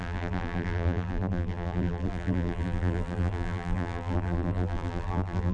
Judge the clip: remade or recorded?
remade